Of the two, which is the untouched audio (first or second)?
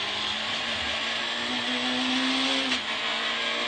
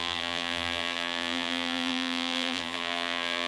first